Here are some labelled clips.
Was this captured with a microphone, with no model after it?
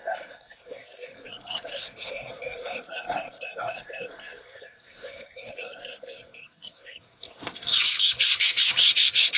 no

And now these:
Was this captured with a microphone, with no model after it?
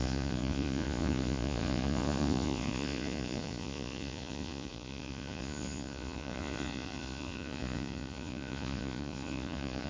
no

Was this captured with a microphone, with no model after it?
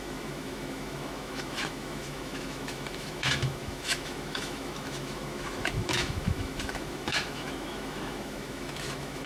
no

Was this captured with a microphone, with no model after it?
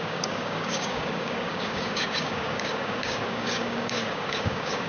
no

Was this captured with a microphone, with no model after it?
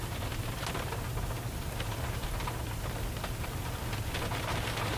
yes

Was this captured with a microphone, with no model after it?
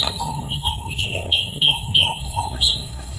no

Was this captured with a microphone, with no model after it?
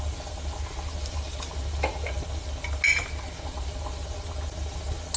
yes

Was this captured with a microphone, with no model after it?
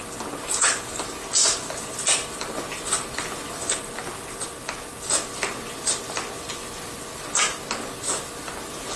yes